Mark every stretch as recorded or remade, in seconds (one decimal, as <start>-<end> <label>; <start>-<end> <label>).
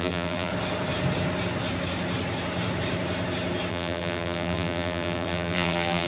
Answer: 0.0-0.5 remade; 0.5-3.7 recorded; 3.7-6.1 remade